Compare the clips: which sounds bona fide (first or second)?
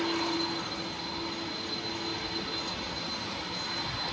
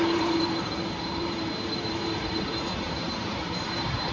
first